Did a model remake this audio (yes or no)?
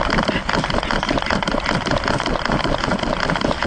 no